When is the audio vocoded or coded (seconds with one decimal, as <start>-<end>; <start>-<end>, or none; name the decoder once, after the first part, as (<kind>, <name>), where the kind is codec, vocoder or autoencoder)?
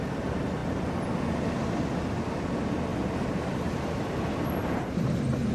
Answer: 2.9-5.5 (vocoder, BigVGAN v2)